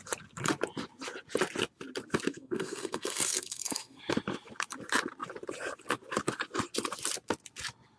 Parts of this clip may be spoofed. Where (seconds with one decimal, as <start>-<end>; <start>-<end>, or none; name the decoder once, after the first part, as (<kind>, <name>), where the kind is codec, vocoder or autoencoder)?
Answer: 2.3-4.0 (codec, SNAC)